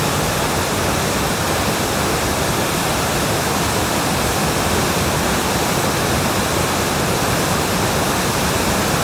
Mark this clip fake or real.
fake